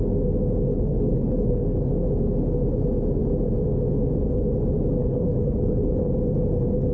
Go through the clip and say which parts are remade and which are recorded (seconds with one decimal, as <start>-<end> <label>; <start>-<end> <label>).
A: 0.0-0.7 recorded; 0.7-1.9 remade; 1.9-5.0 recorded; 5.0-6.1 remade; 6.1-6.9 recorded